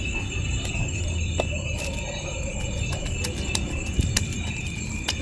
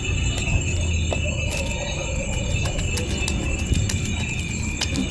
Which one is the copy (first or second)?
first